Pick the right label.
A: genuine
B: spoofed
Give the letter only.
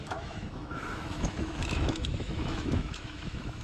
B